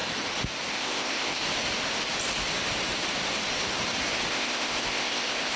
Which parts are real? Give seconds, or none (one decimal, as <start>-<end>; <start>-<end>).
0.0-0.7; 1.4-4.3